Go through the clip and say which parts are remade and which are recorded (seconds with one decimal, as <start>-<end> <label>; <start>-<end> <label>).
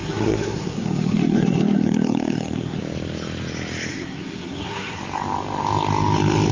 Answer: 0.0-2.8 remade; 2.8-3.9 recorded; 3.9-5.0 remade; 5.0-6.5 recorded